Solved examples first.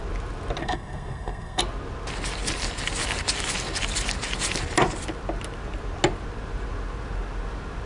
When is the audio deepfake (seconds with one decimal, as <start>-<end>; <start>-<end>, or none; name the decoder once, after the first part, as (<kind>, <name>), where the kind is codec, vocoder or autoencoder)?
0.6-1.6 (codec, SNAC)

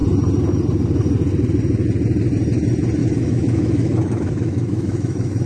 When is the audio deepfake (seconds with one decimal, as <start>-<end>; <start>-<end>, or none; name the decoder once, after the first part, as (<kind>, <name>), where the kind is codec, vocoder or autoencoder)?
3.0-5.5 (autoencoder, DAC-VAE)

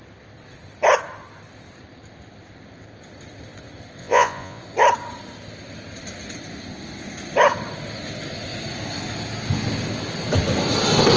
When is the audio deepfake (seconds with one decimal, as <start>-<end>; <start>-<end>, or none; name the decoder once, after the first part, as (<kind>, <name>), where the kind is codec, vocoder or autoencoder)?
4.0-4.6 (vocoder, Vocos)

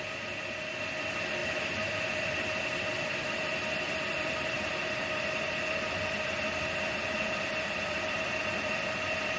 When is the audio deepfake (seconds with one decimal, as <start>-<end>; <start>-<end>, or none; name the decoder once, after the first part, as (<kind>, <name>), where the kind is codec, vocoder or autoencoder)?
none